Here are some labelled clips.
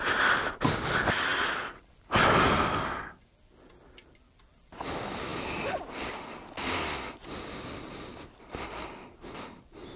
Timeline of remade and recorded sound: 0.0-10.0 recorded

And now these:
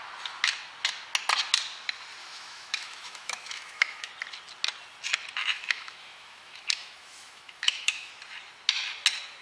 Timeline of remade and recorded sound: 0.0-2.2 recorded; 2.2-4.1 remade; 4.1-5.4 recorded; 5.4-8.1 remade; 8.1-9.4 recorded

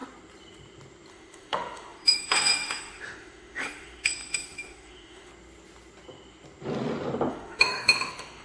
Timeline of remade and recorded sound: 0.0-1.1 recorded; 1.1-5.3 remade; 5.3-7.3 recorded; 7.3-8.4 remade

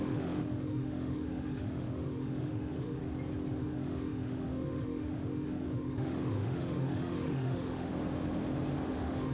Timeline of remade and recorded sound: 0.0-3.0 remade; 3.0-3.6 recorded; 3.6-7.9 remade; 7.9-8.9 recorded; 8.9-9.3 remade

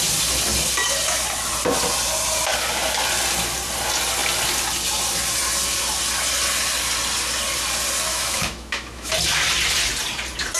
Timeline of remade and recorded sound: 0.0-8.1 recorded; 8.1-9.1 remade; 9.1-10.6 recorded